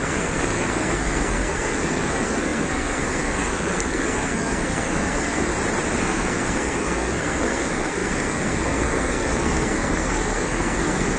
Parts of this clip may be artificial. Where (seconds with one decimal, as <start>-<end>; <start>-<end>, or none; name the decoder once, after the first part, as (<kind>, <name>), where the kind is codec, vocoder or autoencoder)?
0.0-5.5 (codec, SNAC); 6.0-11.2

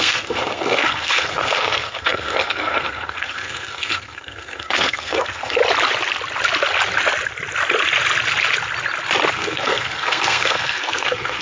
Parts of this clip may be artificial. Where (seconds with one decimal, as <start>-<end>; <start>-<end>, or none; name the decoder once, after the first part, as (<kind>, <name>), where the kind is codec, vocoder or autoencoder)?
0.0-5.6 (codec, SNAC); 9.3-11.4

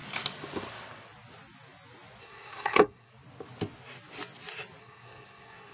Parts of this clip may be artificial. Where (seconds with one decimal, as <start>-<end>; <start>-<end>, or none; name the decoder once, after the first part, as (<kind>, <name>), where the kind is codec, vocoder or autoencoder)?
2.2-3.1 (codec, SNAC); 4.8-5.7

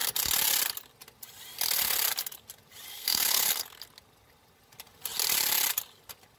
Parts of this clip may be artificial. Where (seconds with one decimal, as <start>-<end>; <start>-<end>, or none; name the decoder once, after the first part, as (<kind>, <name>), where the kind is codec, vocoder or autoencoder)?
2.9-3.5 (codec, SNAC)